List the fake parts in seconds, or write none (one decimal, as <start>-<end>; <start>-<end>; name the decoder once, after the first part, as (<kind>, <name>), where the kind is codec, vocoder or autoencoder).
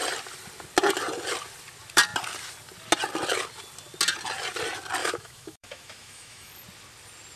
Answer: 5.0-6.5 (autoencoder, DAC-VAE)